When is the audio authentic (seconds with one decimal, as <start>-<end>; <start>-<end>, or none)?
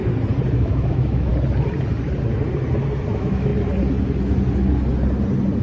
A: 0.0-0.5; 1.3-3.1; 3.5-5.6